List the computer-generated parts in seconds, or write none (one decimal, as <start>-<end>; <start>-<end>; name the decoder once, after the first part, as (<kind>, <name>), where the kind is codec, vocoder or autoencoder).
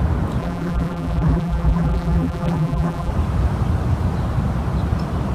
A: 0.4-3.1 (vocoder, BigVGAN v2)